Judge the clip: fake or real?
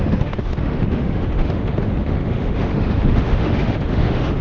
fake